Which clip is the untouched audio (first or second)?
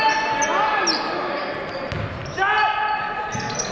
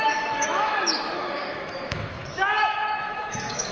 first